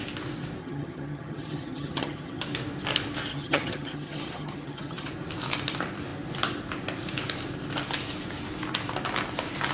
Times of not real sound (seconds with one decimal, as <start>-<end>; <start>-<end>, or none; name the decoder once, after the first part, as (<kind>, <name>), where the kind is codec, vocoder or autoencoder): 0.6-2.4 (vocoder, HiFi-GAN); 3.3-5.1